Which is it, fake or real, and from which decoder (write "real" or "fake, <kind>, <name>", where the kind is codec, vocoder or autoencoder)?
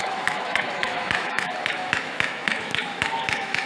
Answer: fake, autoencoder, DAC-VAE